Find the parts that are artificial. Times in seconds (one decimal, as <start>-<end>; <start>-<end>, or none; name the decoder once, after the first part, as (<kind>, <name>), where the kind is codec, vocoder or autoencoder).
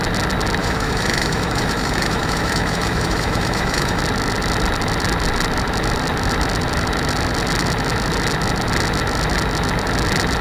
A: 0.6-4.0 (autoencoder, DAC-VAE)